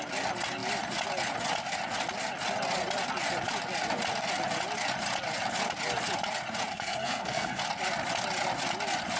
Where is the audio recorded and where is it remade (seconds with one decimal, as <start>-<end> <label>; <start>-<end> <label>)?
0.0-6.7 recorded; 6.7-7.6 remade; 7.6-9.2 recorded